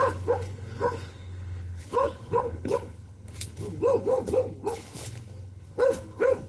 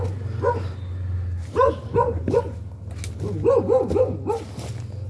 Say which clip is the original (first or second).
second